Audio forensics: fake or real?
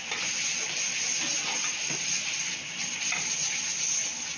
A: real